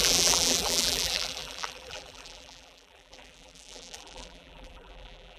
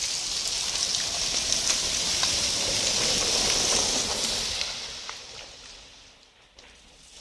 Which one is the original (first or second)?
second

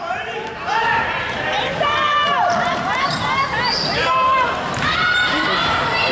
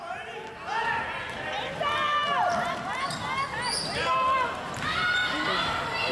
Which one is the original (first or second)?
second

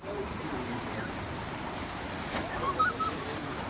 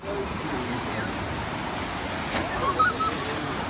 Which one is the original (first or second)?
second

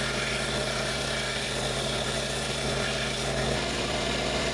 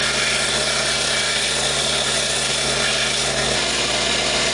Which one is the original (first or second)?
second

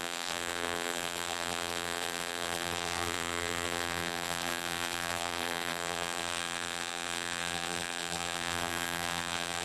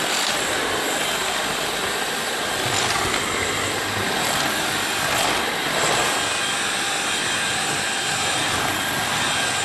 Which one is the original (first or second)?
second